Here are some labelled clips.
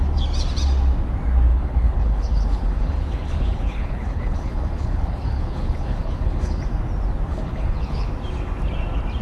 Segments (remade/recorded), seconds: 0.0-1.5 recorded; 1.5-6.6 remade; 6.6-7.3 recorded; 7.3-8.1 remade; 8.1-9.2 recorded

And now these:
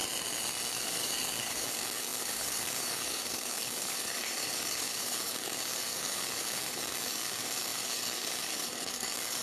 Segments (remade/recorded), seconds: 0.0-0.7 recorded; 0.7-9.4 remade

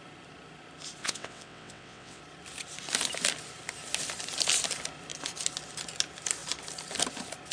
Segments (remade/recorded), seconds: 0.0-1.0 recorded; 1.0-2.2 remade; 2.2-7.5 recorded

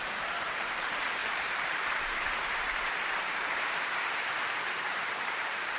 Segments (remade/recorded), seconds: 0.0-1.2 remade; 1.2-1.9 recorded; 1.9-5.8 remade

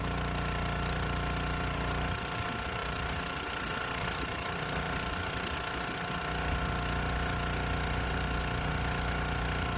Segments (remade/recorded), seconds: 0.0-9.8 recorded

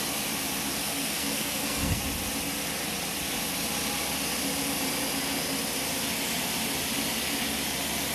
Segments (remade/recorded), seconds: 0.0-0.8 recorded; 0.8-2.0 remade; 2.0-8.1 recorded

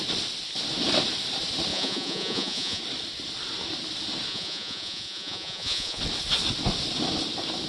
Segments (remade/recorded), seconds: 0.0-1.7 recorded; 1.7-2.8 remade; 2.8-4.3 recorded; 4.3-6.0 remade; 6.0-7.7 recorded

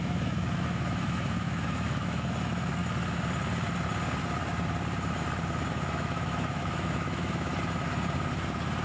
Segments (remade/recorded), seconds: 0.0-2.8 remade; 2.8-5.7 recorded; 5.7-7.5 remade; 7.5-8.8 recorded